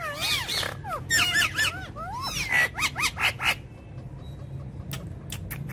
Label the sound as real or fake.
real